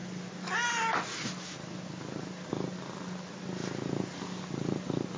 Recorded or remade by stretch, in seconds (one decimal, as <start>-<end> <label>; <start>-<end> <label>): 0.0-5.2 recorded